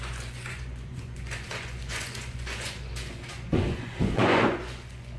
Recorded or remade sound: remade